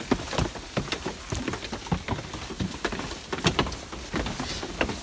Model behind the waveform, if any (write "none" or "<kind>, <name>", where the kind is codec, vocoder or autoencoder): none